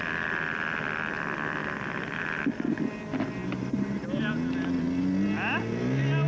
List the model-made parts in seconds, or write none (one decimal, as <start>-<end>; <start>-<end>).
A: none

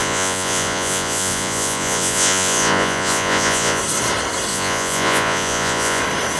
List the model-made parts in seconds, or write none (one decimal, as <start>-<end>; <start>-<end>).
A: 0.0-3.8; 4.5-6.0

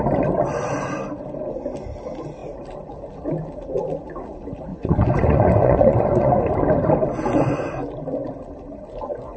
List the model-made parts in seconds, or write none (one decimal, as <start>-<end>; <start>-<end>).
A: 4.7-6.3

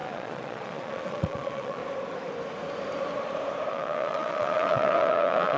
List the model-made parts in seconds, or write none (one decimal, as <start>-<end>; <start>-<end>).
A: 0.0-1.8; 3.7-5.6

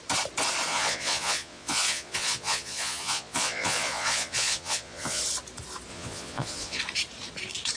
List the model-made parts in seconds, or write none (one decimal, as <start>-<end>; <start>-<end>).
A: 0.7-5.2; 5.9-6.8

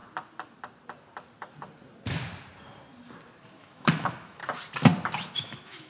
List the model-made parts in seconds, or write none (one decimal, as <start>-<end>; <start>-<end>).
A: 3.5-4.4; 5.3-5.9

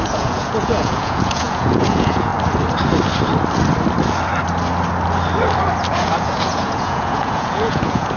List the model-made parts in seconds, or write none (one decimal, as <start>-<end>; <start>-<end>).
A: 0.0-2.3; 5.9-8.2

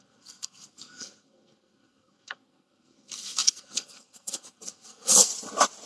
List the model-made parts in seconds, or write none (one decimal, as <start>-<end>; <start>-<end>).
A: 0.0-5.3